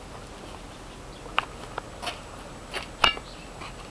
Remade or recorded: recorded